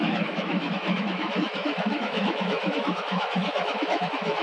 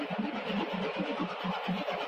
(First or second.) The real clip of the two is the second